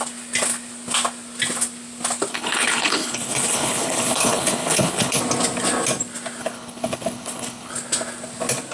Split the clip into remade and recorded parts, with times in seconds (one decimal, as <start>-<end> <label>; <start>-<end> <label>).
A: 0.0-2.3 recorded; 2.3-5.2 remade; 5.2-6.4 recorded; 6.4-7.7 remade; 7.7-8.7 recorded